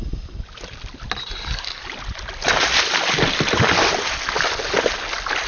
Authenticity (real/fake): real